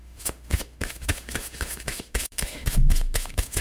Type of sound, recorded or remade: remade